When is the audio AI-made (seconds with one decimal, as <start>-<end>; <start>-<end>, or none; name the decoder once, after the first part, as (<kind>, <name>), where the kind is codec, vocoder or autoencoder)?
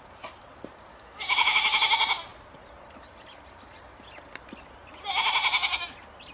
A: 0.9-1.8 (autoencoder, DAC-VAE)